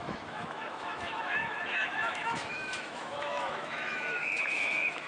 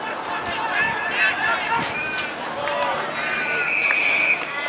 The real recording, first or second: second